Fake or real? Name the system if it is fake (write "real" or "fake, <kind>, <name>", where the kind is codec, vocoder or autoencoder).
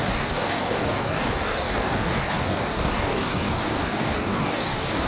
fake, codec, DAC